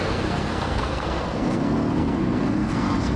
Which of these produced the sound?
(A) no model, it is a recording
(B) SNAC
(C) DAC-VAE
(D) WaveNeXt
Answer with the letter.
B